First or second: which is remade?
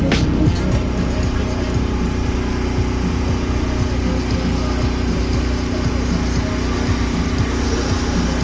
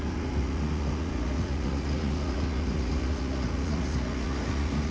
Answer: second